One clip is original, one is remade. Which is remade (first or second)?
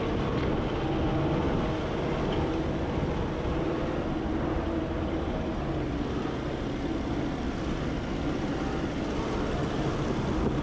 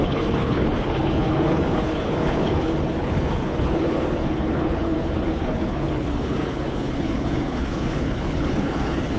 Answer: second